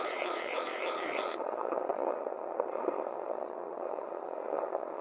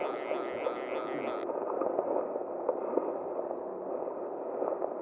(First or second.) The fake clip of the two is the first